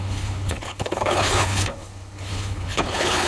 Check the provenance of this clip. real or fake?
fake